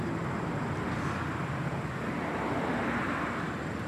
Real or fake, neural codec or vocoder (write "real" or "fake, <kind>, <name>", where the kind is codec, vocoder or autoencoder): real